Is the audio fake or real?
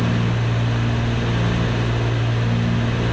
real